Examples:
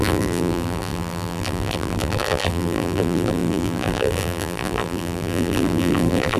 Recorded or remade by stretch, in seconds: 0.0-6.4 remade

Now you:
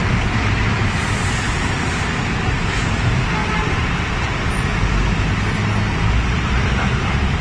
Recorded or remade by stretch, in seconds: 0.0-3.4 recorded; 3.4-3.9 remade; 3.9-7.4 recorded

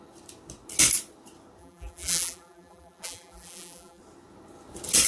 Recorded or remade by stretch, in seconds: 0.0-1.6 recorded; 1.6-4.0 remade; 4.0-5.1 recorded